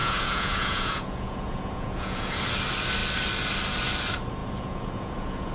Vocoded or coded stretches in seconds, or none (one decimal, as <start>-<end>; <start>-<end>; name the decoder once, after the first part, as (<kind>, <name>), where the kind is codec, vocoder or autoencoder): 0.0-2.4 (vocoder, Vocos); 4.4-5.5